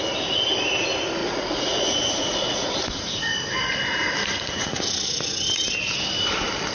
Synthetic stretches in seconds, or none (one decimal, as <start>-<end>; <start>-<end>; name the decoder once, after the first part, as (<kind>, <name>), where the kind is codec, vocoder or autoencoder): 1.2-3.2 (vocoder, Vocos); 4.2-4.8